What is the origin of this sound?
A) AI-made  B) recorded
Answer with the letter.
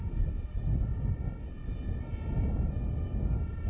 B